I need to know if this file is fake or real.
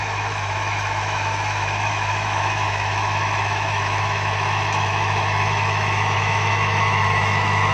fake